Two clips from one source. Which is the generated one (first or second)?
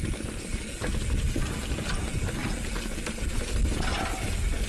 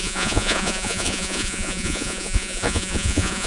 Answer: second